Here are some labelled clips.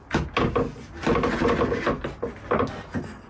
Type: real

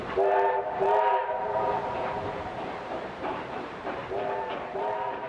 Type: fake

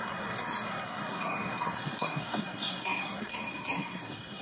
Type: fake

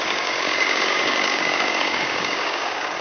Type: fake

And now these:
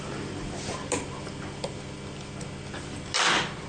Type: real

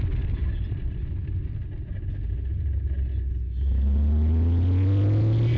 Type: real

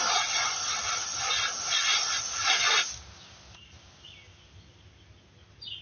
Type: real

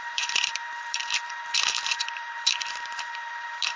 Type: fake